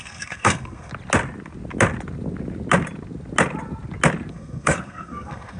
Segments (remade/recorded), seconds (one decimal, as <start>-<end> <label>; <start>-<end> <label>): 0.0-0.9 remade; 0.9-4.3 recorded; 4.3-5.6 remade